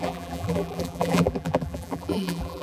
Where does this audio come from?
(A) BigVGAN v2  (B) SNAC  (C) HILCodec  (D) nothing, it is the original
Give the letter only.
A